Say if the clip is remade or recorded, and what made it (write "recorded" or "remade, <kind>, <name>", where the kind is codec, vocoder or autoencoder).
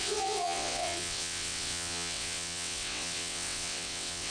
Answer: remade, vocoder, WaveNeXt